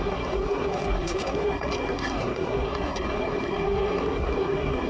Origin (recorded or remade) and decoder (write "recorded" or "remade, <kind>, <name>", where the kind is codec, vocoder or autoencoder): remade, codec, SNAC